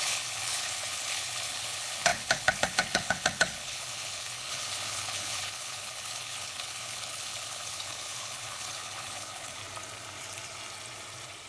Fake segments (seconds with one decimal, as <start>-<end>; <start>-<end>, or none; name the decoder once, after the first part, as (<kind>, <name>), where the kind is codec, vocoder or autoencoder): 0.0-9.6 (codec, HILCodec)